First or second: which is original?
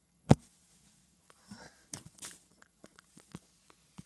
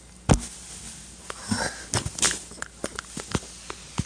second